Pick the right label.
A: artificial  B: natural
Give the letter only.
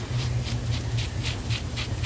A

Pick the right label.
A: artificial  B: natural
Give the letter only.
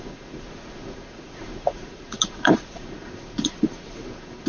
A